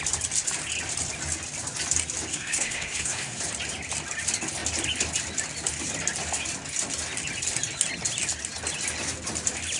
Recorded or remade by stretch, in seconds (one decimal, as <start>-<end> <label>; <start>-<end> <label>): 0.0-2.3 recorded; 2.3-3.4 remade; 3.4-9.8 recorded